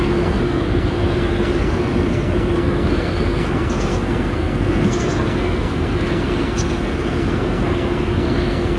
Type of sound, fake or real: fake